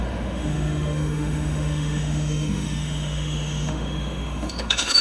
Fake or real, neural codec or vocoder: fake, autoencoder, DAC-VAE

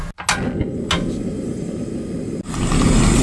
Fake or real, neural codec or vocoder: real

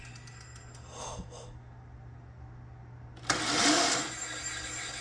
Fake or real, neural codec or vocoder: real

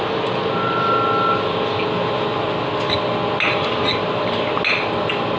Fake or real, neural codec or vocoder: real